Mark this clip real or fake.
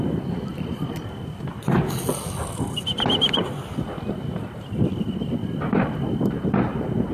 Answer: real